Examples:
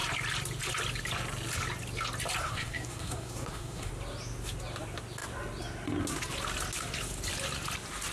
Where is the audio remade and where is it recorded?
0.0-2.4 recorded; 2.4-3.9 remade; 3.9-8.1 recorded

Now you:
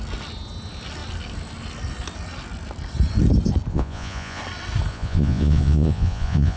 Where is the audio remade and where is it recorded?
0.0-3.7 recorded; 3.7-4.4 remade; 4.4-4.9 recorded; 4.9-6.6 remade